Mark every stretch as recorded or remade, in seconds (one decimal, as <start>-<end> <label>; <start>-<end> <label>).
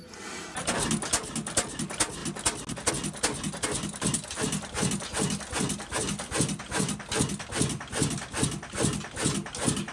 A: 0.0-9.9 recorded